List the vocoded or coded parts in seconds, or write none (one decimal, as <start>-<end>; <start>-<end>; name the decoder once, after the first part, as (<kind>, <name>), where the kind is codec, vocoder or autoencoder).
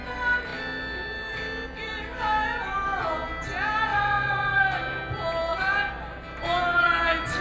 3.9-4.6 (vocoder, Vocos)